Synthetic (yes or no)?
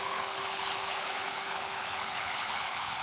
yes